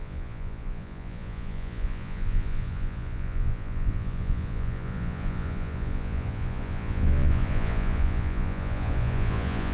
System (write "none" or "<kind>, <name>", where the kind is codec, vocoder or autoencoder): vocoder, Vocos